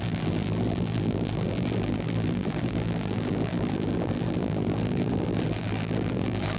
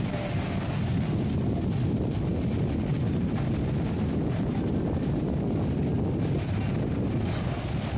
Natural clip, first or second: second